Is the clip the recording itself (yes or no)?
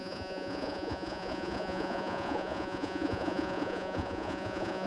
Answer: no